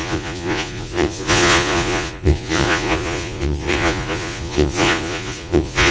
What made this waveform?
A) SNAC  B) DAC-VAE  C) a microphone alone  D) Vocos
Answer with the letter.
D